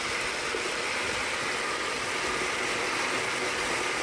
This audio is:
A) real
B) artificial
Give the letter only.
A